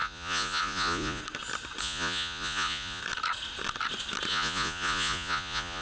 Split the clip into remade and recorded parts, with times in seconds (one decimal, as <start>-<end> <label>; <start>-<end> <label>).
0.0-1.2 remade; 1.2-1.8 recorded; 1.8-3.0 remade; 3.0-4.3 recorded; 4.3-5.8 remade